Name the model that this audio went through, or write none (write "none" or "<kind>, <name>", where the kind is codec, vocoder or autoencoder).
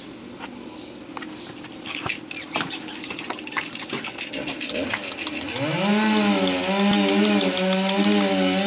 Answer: none